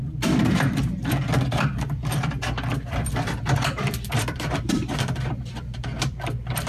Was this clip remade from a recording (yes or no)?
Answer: yes